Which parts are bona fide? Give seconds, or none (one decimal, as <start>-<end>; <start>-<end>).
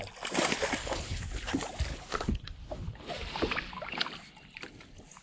0.0-0.8; 1.5-1.9; 3.1-5.2